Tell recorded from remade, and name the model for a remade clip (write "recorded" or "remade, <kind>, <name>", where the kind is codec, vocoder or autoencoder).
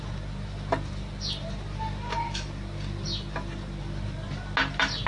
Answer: recorded